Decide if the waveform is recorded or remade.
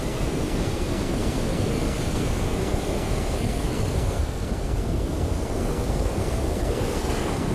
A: remade